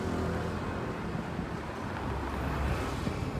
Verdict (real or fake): real